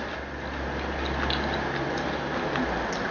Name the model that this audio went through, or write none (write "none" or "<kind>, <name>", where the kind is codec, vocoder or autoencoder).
none